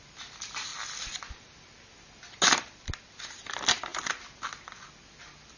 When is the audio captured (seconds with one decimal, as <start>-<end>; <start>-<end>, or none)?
0.0-5.6